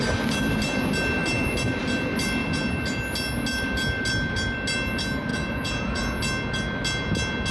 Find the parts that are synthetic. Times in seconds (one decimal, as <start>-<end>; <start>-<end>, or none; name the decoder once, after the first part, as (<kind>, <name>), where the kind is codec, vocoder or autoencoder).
5.3-6.2 (vocoder, Vocos)